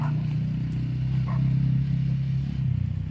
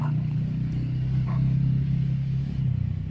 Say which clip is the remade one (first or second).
second